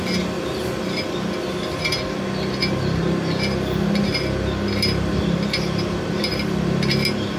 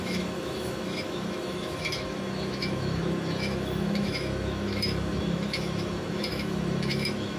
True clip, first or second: first